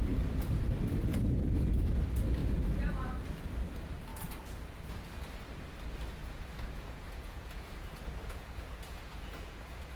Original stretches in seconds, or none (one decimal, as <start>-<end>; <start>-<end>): 0.0-1.1; 2.0-6.2

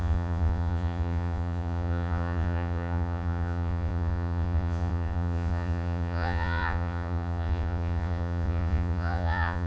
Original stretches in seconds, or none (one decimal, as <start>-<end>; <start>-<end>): none